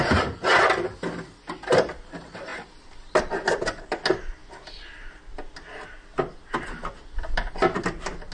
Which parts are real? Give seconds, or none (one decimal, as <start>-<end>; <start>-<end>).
0.0-8.3